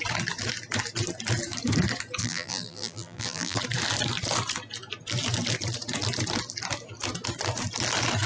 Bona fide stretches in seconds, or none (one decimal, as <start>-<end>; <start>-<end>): 0.0-2.2; 3.6-8.3